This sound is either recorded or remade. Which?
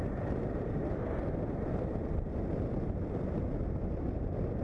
recorded